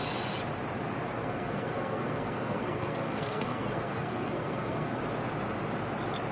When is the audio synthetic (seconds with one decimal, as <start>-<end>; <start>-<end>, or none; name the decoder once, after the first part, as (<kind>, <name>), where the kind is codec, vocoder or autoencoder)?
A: 1.2-5.0 (codec, SNAC)